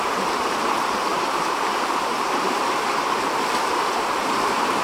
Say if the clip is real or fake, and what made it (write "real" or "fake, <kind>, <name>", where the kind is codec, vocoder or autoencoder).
fake, vocoder, BigVGAN v2